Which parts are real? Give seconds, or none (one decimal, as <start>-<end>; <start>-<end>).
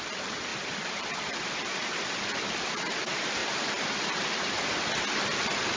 0.0-0.5; 1.8-3.4; 4.7-5.8